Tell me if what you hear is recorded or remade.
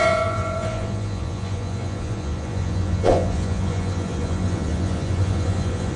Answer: remade